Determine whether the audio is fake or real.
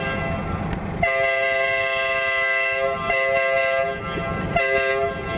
real